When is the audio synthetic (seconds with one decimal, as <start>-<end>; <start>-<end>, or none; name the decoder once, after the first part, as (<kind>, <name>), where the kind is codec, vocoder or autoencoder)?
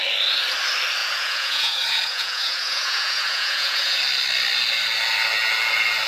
1.0-4.0 (vocoder, Vocos)